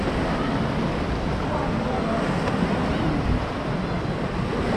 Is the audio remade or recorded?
recorded